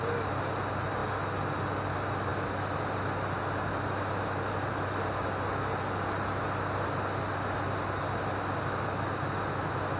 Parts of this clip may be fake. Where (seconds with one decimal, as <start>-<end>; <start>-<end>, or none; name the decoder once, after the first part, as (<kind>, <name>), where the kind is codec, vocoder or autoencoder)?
none